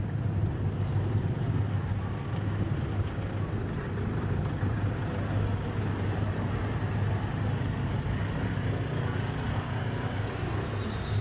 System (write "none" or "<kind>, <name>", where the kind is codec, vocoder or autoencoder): none